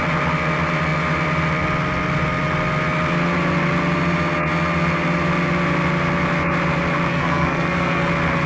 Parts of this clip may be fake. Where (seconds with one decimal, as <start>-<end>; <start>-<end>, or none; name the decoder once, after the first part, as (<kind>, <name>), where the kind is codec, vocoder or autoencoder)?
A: 7.1-8.1 (codec, SNAC)